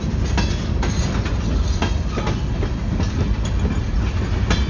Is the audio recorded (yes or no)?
yes